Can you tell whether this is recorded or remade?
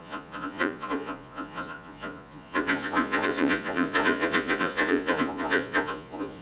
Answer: remade